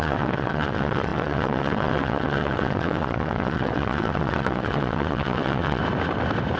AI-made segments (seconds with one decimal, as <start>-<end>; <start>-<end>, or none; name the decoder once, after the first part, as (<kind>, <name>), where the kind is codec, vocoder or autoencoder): 0.0-5.8 (vocoder, WaveNeXt)